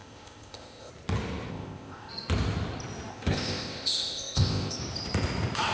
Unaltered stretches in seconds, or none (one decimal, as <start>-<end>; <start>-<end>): 0.9-1.5; 2.1-3.1; 4.8-5.7